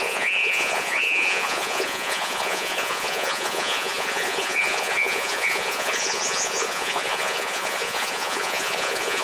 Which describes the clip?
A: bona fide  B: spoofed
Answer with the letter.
B